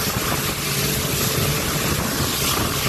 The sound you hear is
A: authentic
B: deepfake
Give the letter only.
A